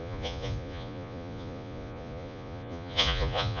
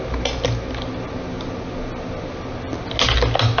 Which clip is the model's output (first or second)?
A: first